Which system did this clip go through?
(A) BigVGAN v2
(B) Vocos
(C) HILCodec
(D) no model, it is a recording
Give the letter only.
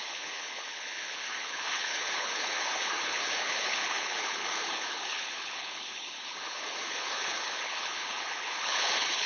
C